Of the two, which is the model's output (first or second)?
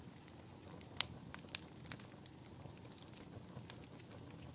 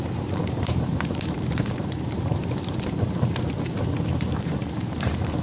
second